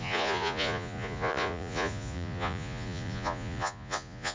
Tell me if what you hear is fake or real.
fake